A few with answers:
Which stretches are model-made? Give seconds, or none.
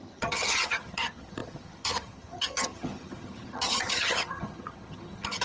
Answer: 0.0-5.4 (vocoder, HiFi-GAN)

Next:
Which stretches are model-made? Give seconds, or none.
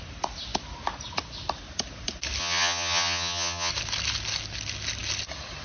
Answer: 2.4-3.7 (vocoder, HiFi-GAN)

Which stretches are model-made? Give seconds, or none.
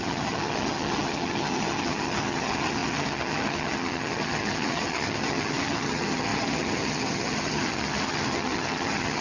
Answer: 0.0-9.2 (vocoder, HiFi-GAN)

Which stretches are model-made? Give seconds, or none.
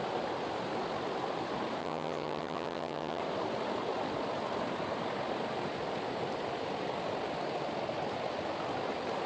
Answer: 1.8-3.2 (vocoder, HiFi-GAN)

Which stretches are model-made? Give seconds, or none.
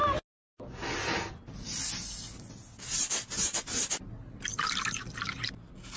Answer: none